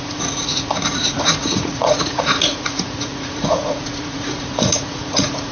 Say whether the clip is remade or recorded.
remade